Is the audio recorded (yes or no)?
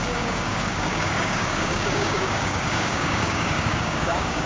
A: no